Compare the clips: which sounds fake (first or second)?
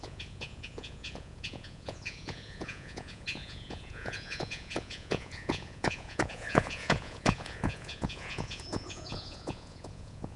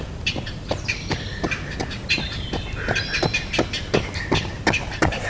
first